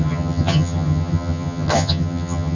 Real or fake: fake